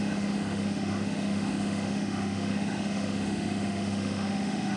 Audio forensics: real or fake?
fake